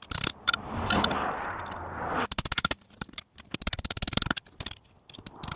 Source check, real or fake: fake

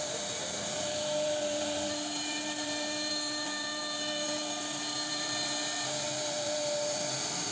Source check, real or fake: fake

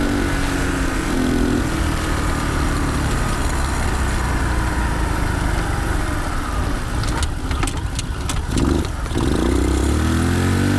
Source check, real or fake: real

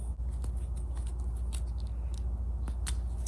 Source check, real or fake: real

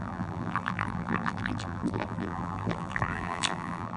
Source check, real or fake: fake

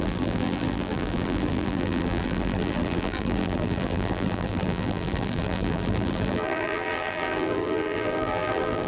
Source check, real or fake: fake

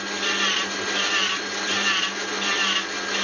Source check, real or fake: real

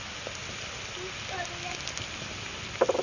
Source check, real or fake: real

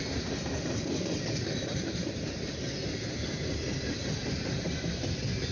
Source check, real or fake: fake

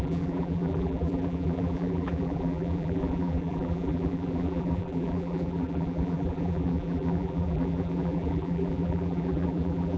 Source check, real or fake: fake